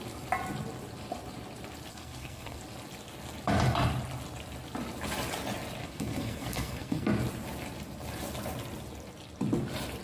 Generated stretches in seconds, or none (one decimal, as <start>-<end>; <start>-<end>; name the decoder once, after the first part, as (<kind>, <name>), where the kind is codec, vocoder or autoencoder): 1.9-2.6 (codec, SNAC); 5.8-7.2

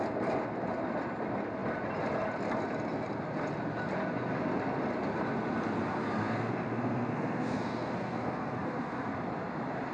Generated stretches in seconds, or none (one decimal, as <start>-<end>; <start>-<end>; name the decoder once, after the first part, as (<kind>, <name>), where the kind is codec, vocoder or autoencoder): 6.2-9.1 (codec, SNAC)

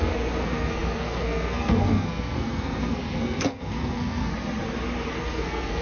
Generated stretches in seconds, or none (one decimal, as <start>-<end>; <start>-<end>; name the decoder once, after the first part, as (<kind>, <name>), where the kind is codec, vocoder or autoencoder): 0.0-4.3 (codec, SNAC); 5.1-5.8

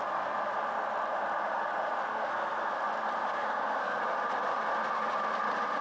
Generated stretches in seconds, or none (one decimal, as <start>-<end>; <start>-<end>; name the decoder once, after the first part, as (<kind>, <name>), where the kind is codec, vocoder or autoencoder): 2.1-2.7 (codec, SNAC); 3.3-4.0

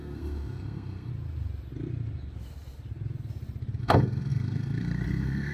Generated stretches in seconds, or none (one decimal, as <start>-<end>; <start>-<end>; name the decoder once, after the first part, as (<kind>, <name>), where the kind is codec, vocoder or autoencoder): 0.0-1.1 (codec, SNAC); 3.8-5.5

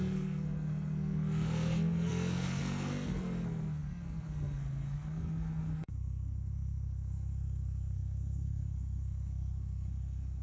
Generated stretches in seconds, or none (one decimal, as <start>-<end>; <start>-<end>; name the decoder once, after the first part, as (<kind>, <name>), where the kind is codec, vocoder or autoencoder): 0.0-10.4 (codec, SNAC)